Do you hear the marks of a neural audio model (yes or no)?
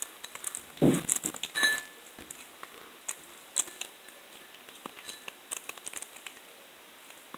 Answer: no